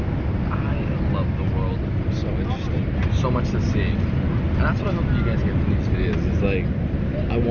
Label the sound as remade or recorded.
recorded